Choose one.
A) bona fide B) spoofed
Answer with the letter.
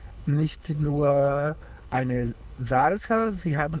B